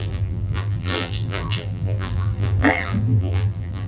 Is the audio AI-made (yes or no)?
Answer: yes